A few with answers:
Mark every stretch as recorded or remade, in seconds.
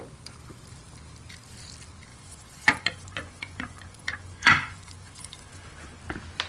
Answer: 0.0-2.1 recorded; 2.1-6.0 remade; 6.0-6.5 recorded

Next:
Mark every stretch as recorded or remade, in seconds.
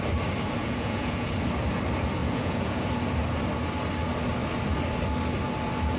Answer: 0.0-0.6 recorded; 0.6-1.3 remade; 1.3-2.2 recorded; 2.2-2.8 remade; 2.8-6.0 recorded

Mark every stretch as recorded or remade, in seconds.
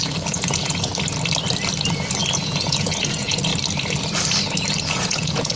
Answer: 0.0-0.9 remade; 0.9-2.3 recorded; 2.3-3.5 remade; 3.5-4.9 recorded; 4.9-5.6 remade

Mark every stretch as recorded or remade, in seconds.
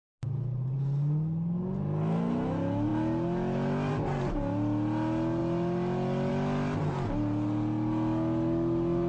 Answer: 0.0-9.1 recorded